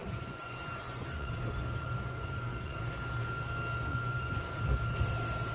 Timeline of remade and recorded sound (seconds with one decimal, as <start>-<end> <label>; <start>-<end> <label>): 0.0-2.8 remade; 2.8-3.9 recorded; 3.9-4.6 remade; 4.6-5.5 recorded